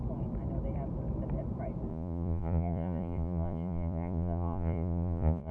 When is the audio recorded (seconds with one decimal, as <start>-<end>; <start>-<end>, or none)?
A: 0.0-1.9